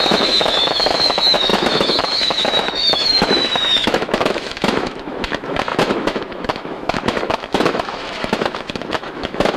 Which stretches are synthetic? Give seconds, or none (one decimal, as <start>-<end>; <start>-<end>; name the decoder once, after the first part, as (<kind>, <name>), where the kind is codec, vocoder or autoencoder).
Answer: 0.0-9.6 (autoencoder, DAC-VAE)